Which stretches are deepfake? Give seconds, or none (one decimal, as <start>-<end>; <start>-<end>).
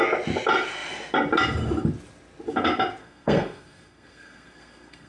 3.0-5.1